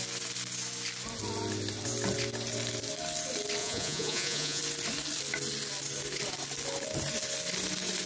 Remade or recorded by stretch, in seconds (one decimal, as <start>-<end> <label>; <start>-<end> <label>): 0.0-3.6 recorded; 3.6-4.6 remade; 4.6-8.1 recorded